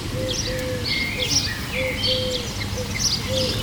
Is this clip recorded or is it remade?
recorded